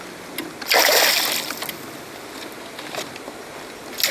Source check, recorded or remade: recorded